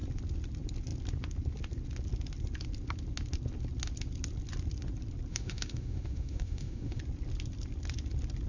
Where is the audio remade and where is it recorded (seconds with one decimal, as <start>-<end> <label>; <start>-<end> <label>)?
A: 0.0-5.3 recorded; 5.3-7.0 remade; 7.0-8.5 recorded